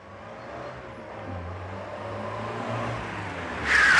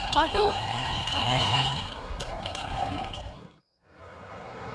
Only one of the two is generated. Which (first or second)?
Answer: second